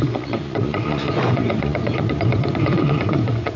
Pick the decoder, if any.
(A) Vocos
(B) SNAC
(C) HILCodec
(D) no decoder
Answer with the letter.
A